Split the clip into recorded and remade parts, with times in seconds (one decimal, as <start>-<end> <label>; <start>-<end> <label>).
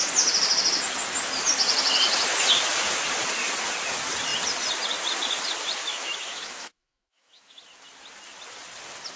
0.0-5.8 recorded; 5.8-7.6 remade; 7.6-9.2 recorded